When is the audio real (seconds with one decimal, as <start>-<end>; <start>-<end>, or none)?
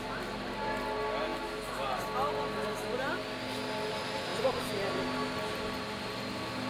0.0-6.7